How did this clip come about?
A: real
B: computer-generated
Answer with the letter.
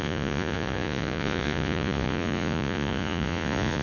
B